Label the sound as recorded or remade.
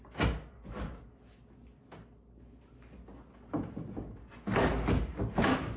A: recorded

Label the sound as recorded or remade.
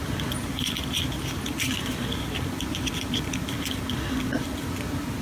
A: recorded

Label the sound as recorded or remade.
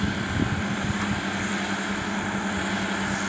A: recorded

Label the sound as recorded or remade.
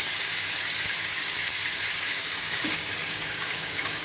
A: remade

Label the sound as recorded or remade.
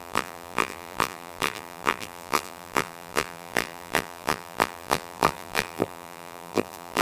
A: remade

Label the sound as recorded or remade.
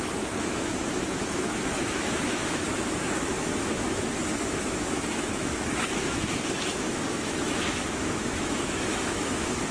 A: remade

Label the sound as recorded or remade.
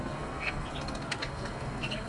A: remade